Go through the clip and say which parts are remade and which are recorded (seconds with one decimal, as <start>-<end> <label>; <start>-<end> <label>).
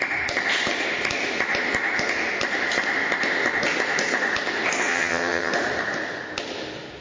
0.0-4.9 recorded; 4.9-5.5 remade; 5.5-7.0 recorded